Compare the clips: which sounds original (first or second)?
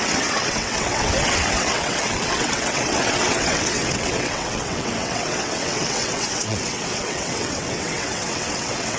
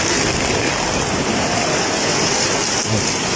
second